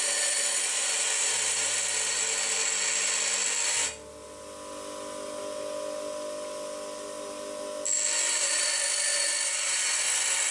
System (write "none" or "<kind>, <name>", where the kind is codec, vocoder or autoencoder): none